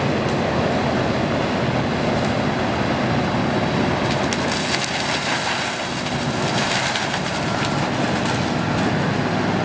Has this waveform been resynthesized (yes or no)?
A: no